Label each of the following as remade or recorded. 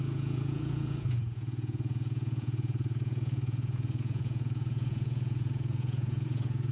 remade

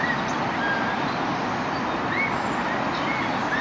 recorded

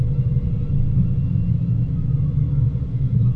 recorded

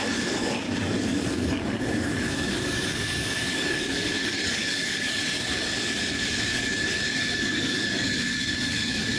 remade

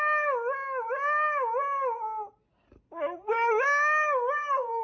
recorded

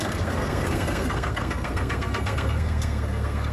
remade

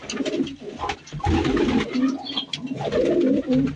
recorded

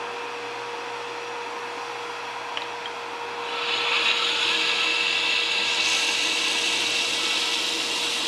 recorded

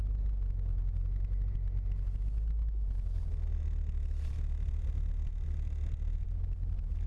recorded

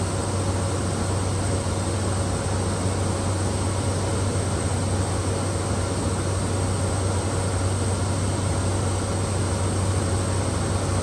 recorded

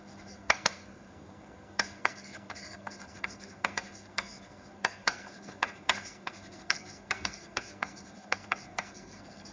remade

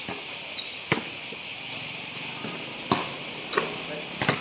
recorded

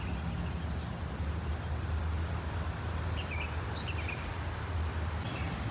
recorded